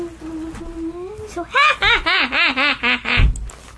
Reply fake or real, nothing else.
real